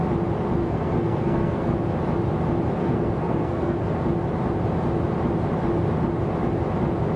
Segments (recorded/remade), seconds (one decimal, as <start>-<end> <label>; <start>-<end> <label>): 0.0-0.6 recorded; 0.6-1.7 remade; 1.7-2.8 recorded; 2.8-3.8 remade; 3.8-7.2 recorded